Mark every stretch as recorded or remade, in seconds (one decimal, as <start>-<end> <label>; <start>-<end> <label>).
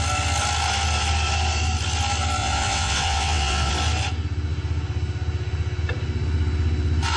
0.0-2.4 recorded; 2.4-3.7 remade; 3.7-7.2 recorded